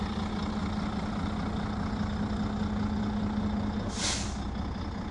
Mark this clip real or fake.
real